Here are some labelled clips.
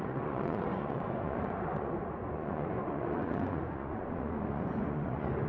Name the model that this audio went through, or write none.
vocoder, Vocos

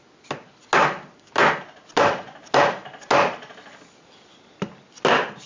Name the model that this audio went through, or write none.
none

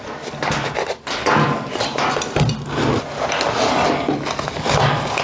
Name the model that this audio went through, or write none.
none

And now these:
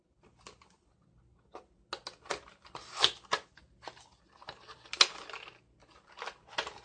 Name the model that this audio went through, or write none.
none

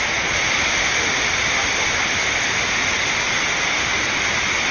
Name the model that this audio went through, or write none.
none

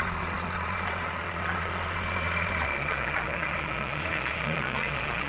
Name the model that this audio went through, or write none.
vocoder, Vocos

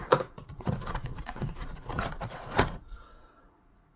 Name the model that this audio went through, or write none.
vocoder, Vocos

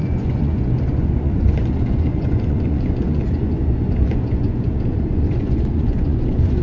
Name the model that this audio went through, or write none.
vocoder, Vocos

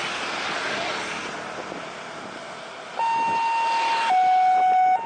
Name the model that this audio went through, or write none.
none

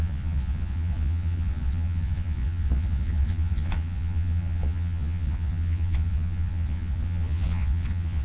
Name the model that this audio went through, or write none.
vocoder, Vocos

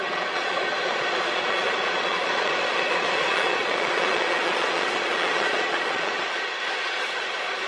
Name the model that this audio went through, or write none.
vocoder, Vocos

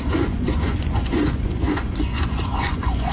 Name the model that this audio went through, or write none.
vocoder, Vocos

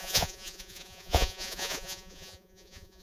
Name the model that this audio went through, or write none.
vocoder, Vocos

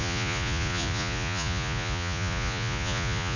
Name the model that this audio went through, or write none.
vocoder, Vocos